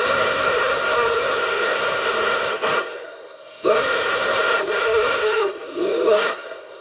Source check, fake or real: fake